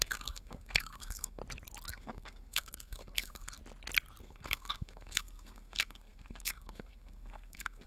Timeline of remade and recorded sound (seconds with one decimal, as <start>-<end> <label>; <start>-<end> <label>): 0.0-1.4 remade; 1.4-1.9 recorded; 1.9-3.6 remade; 3.6-4.2 recorded; 4.2-7.9 remade